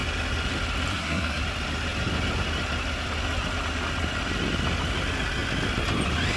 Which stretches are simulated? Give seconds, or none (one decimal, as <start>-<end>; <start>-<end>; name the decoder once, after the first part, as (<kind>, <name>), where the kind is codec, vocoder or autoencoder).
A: 0.9-1.4 (codec, SNAC)